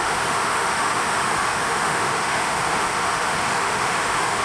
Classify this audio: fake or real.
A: fake